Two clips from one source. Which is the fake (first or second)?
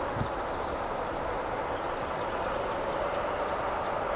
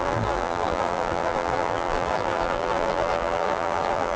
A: second